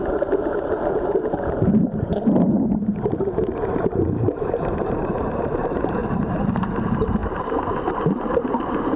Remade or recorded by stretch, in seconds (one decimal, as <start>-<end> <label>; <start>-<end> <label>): 0.0-2.1 remade; 2.1-2.9 recorded; 2.9-9.0 remade